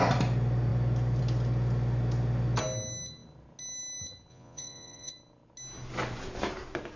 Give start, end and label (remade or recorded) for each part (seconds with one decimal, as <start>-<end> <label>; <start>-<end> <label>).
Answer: 0.0-4.3 recorded; 4.3-5.1 remade; 5.1-7.0 recorded